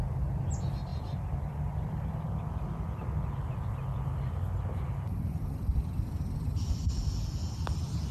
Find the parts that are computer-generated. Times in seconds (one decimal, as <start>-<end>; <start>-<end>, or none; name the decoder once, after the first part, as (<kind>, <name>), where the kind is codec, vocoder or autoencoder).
none